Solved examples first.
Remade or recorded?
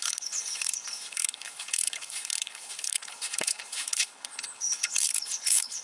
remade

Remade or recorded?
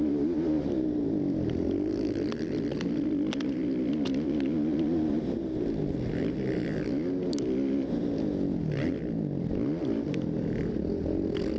recorded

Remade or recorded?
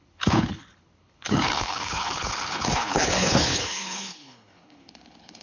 remade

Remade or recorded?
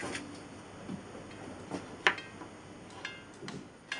recorded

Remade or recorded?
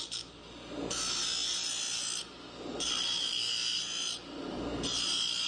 recorded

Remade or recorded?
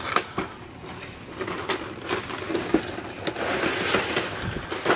recorded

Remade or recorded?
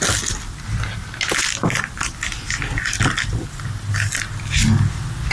recorded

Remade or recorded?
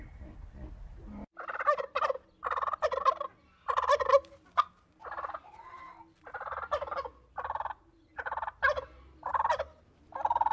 recorded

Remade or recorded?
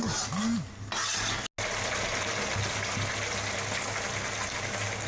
recorded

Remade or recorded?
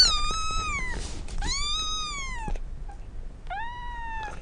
recorded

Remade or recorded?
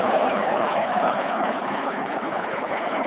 remade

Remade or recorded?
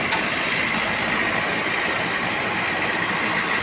recorded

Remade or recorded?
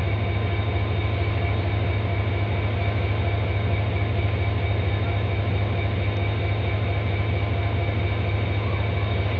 recorded